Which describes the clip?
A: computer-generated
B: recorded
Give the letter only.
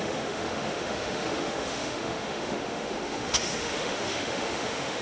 A